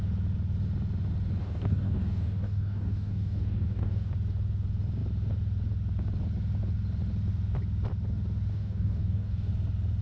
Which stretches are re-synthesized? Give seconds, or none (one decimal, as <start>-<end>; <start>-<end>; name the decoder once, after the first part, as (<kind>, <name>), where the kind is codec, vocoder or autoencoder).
1.4-4.1 (codec, DAC); 8.5-9.5